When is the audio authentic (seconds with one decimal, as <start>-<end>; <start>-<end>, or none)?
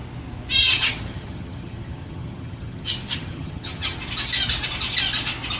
0.0-0.6; 4.0-5.6